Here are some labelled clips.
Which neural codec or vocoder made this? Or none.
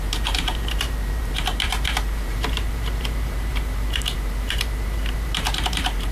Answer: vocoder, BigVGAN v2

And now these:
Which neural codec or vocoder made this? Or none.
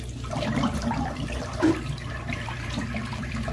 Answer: vocoder, BigVGAN v2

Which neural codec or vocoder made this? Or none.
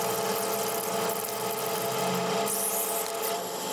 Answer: none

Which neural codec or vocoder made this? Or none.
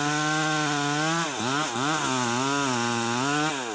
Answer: none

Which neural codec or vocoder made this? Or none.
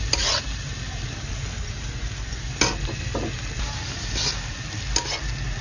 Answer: none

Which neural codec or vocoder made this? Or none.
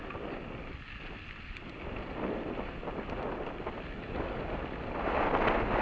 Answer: none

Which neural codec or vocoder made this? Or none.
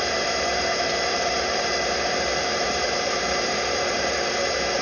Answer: vocoder, BigVGAN v2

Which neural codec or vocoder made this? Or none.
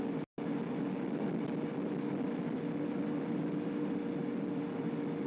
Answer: none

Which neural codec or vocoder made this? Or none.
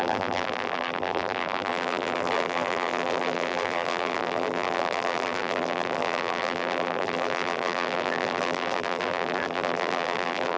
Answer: vocoder, BigVGAN v2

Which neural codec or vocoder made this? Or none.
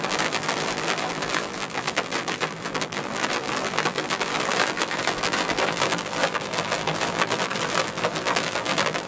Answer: vocoder, BigVGAN v2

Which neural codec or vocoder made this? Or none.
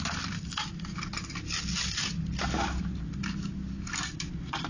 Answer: none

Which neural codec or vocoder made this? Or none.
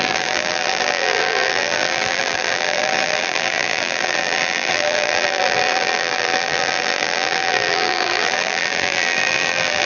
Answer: vocoder, BigVGAN v2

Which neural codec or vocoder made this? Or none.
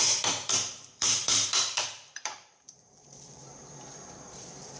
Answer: vocoder, BigVGAN v2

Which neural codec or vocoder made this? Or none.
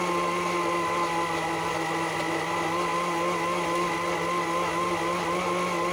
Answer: none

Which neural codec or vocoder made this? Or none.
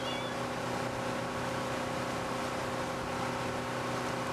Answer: none